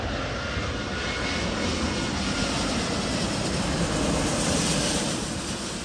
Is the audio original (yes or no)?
yes